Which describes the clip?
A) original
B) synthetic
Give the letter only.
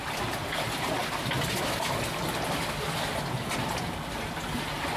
A